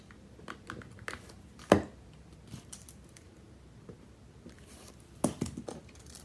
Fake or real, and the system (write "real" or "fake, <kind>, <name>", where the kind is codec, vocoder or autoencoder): real